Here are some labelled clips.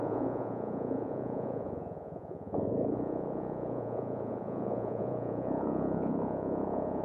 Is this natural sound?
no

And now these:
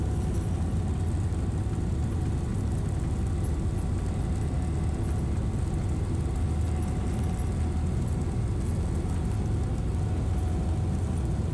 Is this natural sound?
yes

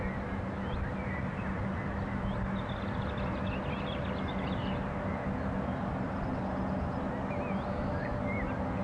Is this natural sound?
yes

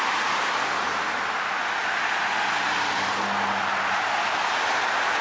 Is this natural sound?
yes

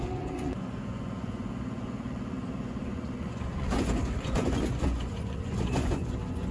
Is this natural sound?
no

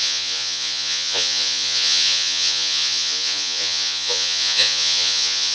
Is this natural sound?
no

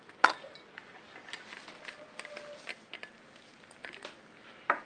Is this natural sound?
yes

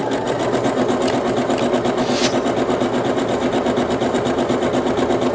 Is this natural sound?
yes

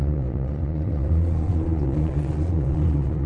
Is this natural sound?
no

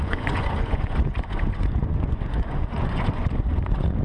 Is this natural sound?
no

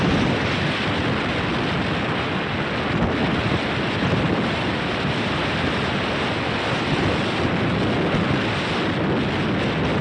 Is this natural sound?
yes